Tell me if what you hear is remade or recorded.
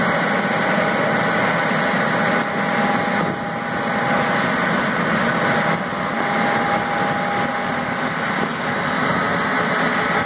recorded